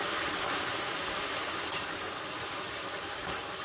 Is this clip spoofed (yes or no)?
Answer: no